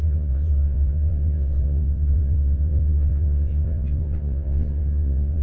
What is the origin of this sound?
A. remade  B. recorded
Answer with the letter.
A